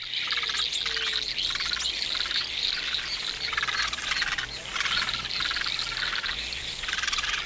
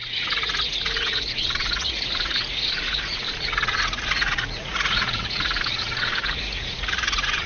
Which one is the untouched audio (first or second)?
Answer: first